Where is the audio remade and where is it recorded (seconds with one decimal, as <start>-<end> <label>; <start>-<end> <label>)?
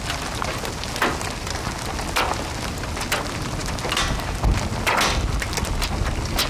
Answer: 0.0-6.5 recorded